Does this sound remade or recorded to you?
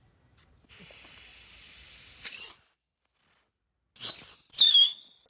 recorded